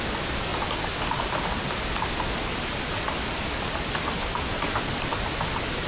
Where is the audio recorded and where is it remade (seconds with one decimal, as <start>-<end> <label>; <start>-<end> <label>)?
0.0-5.9 recorded